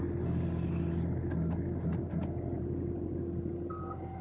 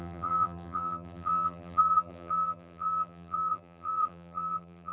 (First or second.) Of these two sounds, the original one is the first